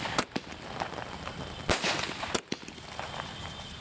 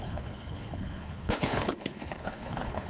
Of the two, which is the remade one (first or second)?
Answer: second